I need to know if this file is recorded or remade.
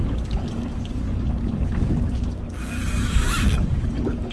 remade